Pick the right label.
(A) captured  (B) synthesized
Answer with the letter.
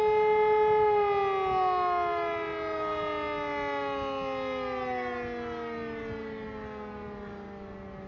A